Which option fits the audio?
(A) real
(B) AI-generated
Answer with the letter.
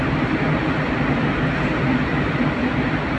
A